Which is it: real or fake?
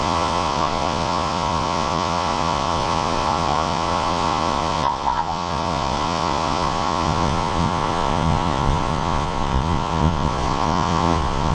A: fake